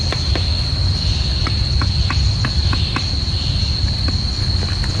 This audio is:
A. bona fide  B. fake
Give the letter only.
A